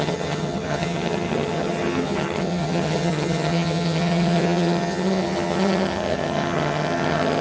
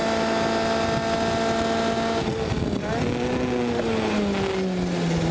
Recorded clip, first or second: second